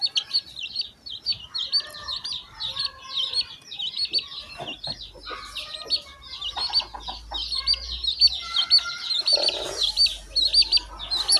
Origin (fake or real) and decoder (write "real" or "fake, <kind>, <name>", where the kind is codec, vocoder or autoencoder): real